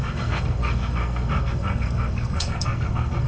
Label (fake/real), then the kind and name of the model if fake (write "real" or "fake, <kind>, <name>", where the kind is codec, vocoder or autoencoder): fake, codec, SNAC